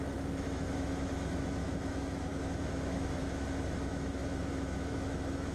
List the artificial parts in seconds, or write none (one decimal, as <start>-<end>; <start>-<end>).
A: 0.0-5.5